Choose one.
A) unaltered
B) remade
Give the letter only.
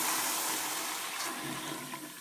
A